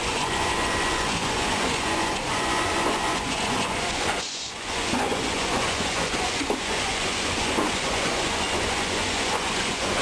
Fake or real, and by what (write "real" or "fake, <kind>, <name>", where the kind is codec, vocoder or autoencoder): fake, vocoder, Vocos